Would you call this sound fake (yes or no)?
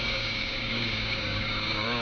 yes